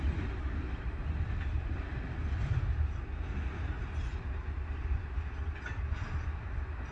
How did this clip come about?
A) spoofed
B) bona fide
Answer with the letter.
B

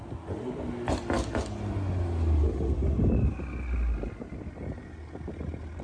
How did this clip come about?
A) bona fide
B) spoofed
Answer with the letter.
A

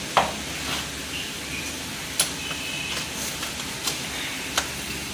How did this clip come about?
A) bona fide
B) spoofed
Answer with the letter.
A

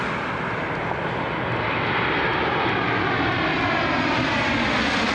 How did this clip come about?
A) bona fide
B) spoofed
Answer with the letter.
A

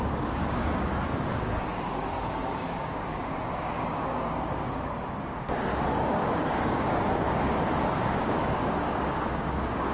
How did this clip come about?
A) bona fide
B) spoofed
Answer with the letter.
B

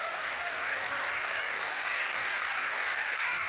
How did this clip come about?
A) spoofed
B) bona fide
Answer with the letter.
A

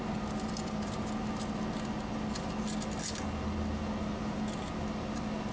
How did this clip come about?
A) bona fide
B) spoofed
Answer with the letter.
A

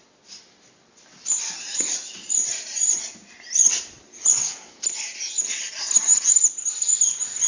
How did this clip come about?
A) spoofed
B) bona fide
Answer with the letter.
B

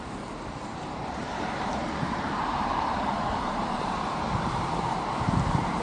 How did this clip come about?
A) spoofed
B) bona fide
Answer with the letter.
A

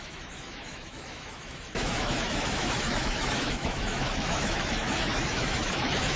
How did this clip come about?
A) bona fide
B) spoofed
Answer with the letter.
B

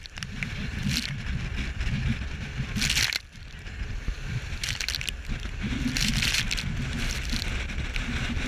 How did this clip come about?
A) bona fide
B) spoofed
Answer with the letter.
A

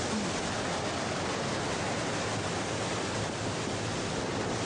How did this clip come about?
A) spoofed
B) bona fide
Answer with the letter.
B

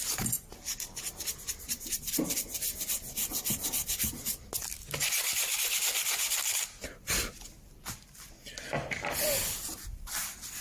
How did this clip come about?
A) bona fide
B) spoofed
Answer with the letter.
A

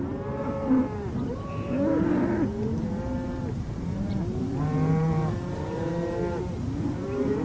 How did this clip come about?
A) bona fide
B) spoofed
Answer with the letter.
B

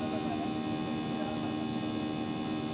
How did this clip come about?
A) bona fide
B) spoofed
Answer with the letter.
A